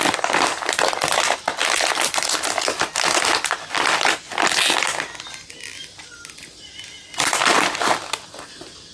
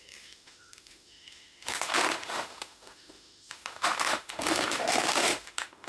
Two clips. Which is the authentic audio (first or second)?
first